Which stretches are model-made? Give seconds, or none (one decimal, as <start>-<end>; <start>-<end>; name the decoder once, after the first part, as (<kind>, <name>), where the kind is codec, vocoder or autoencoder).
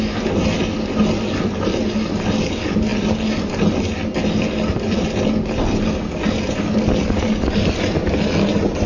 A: none